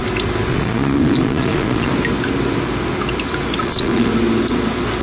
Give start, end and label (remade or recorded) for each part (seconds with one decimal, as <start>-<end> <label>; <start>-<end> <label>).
0.0-0.5 recorded; 0.5-1.9 remade; 1.9-3.6 recorded; 3.6-4.1 remade; 4.1-5.0 recorded